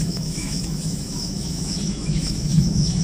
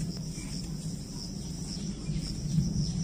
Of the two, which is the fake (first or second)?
first